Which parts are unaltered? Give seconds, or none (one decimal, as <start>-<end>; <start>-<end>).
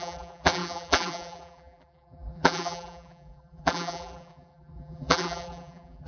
none